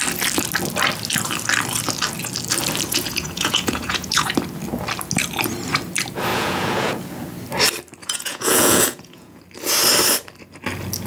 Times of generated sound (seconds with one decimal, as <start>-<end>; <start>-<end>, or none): 2.9-4.3; 6.3-7.0; 8.0-9.4